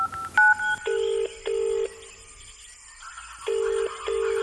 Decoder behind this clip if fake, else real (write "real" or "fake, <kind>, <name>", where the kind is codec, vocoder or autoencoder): real